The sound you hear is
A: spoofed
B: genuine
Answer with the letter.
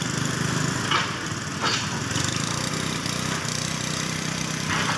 B